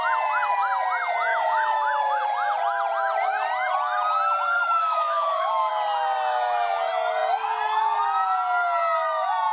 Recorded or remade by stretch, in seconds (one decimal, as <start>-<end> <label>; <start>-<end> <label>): 0.0-1.3 recorded; 1.3-2.2 remade; 2.2-4.6 recorded; 4.6-5.7 remade; 5.7-9.5 recorded